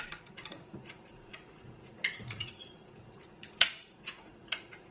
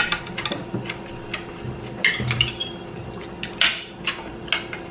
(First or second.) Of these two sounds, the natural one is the second